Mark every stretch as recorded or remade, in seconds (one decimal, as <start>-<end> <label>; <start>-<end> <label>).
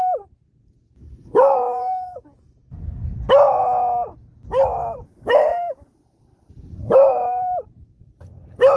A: 0.0-1.0 recorded; 1.0-2.7 remade; 2.7-8.8 recorded